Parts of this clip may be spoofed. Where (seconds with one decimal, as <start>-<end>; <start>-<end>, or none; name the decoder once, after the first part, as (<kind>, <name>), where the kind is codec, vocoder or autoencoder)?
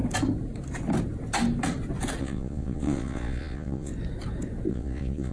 2.2-3.9 (vocoder, Vocos); 4.7-5.3